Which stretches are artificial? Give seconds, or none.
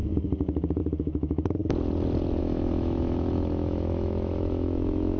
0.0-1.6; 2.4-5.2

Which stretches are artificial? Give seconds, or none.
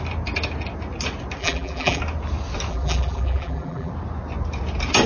1.4-2.0; 2.7-3.9